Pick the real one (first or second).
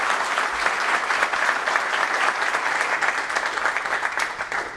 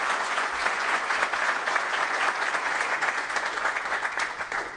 first